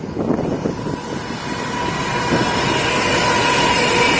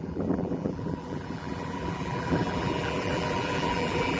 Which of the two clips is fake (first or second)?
second